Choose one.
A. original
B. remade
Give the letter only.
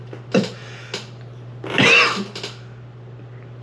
A